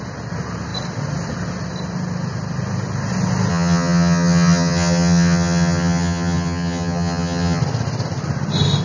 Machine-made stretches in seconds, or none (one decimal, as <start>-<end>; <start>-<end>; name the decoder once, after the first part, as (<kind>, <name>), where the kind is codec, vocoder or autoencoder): 3.5-7.6 (vocoder, HiFi-GAN)

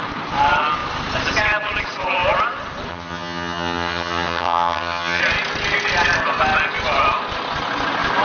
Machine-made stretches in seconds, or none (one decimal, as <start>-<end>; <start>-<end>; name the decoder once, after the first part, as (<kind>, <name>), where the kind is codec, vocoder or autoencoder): 2.9-5.2 (vocoder, HiFi-GAN)

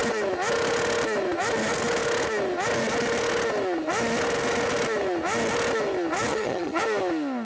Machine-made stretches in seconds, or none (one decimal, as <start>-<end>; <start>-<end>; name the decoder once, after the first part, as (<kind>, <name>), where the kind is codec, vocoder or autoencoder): 6.3-6.8 (vocoder, HiFi-GAN)